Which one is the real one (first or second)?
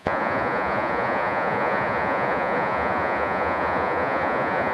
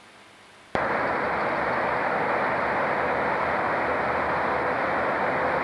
second